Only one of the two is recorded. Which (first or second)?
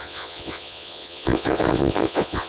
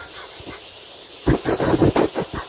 second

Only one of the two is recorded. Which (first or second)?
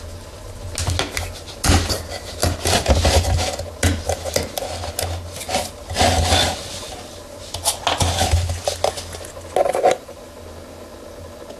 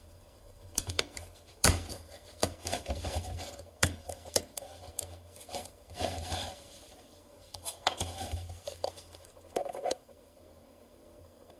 first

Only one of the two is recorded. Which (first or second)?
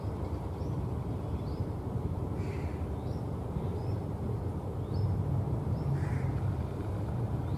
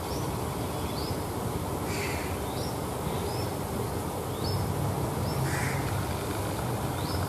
second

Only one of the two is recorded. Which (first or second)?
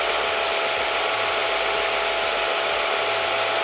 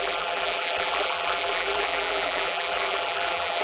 first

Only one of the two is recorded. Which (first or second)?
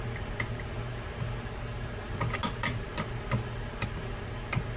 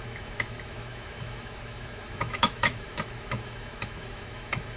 first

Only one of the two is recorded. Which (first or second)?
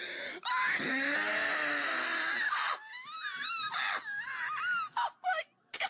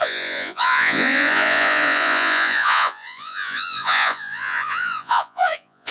first